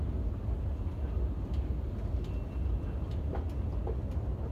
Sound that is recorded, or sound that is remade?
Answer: recorded